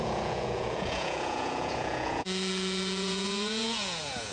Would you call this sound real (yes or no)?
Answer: no